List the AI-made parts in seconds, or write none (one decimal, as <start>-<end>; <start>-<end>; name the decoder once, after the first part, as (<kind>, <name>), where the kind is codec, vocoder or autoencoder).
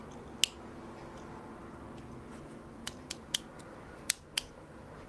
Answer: none